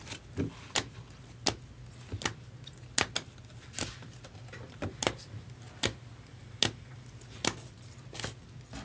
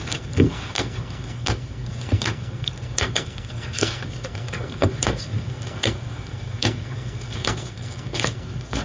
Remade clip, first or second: second